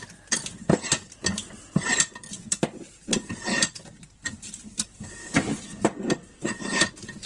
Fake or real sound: fake